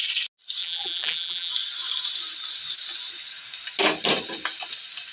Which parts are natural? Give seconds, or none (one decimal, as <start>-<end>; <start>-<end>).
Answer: 0.0-0.6; 1.5-5.1